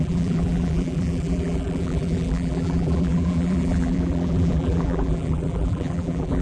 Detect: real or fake fake